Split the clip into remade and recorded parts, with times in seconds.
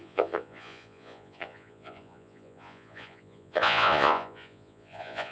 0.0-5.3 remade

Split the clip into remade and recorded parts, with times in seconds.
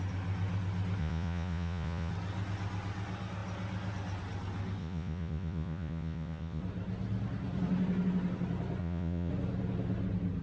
0.0-1.0 recorded; 1.0-2.1 remade; 2.1-4.8 recorded; 4.8-6.6 remade; 6.6-8.8 recorded; 8.8-9.3 remade; 9.3-10.4 recorded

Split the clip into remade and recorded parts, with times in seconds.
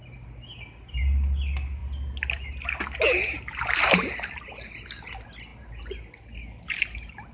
0.0-7.3 recorded